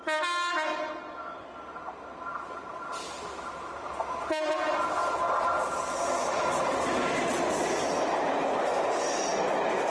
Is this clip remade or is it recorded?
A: recorded